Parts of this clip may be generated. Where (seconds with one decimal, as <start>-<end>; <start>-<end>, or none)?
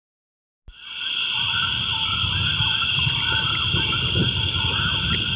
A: none